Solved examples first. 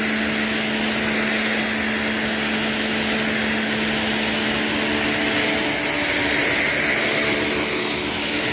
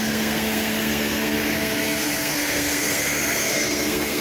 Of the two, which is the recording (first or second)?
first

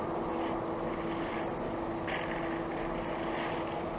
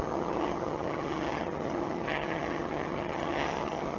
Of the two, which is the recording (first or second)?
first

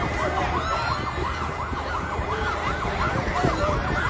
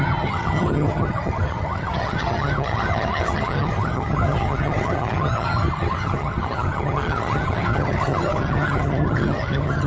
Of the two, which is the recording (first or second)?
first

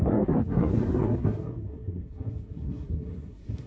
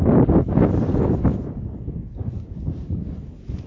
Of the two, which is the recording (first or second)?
second